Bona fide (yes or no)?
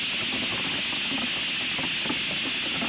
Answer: yes